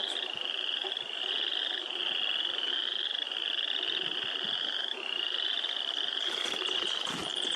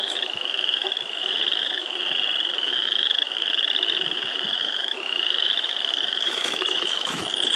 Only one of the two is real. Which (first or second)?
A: first